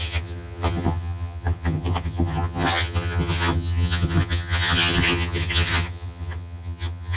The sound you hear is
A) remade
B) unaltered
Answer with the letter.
A